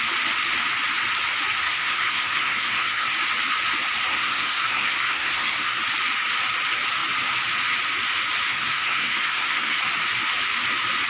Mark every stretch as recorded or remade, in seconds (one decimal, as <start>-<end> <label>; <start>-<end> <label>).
0.0-1.6 recorded; 1.6-3.1 remade; 3.1-4.1 recorded; 4.1-5.8 remade; 5.8-8.5 recorded; 8.5-9.8 remade; 9.8-11.1 recorded